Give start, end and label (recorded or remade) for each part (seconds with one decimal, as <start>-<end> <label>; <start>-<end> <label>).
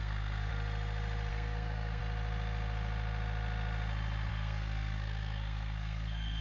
0.0-0.5 remade; 0.5-1.3 recorded; 1.3-2.0 remade; 2.0-4.3 recorded; 4.3-6.4 remade